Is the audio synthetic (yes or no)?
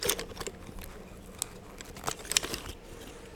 no